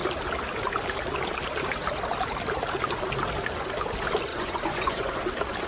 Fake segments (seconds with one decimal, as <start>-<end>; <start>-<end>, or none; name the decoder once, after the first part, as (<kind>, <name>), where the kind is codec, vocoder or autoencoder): 4.3-5.2 (vocoder, Vocos)